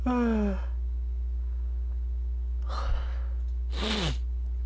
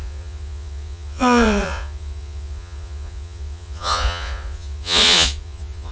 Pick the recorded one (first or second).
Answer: first